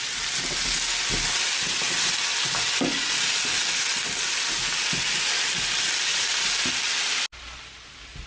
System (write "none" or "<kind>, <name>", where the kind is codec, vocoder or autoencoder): none